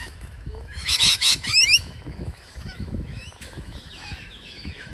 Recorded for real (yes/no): no